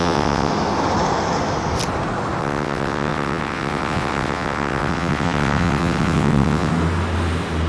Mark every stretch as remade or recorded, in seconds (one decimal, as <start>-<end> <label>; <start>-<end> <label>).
0.0-0.5 remade; 0.5-2.4 recorded; 2.4-6.7 remade; 6.7-7.7 recorded